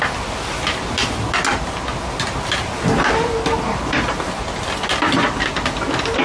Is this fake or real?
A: real